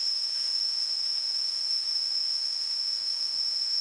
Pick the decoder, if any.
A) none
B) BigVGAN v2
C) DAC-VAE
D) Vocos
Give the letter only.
C